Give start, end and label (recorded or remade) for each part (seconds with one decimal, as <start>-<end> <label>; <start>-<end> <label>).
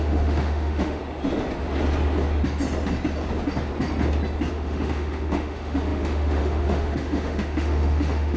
0.0-1.0 remade; 1.0-4.5 recorded; 4.5-8.4 remade